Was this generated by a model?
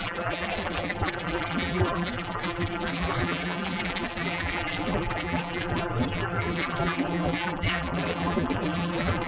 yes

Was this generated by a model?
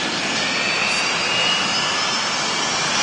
no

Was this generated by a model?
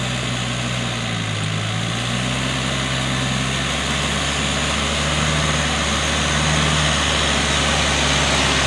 no